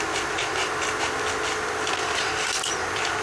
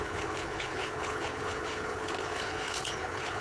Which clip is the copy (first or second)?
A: second